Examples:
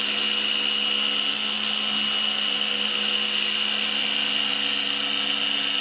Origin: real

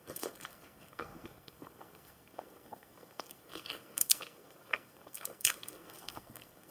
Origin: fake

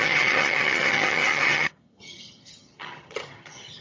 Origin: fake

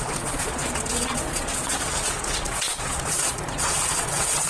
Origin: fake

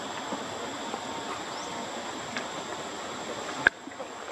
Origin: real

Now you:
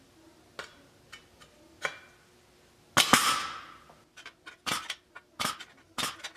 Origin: real